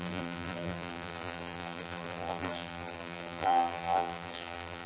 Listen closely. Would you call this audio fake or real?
fake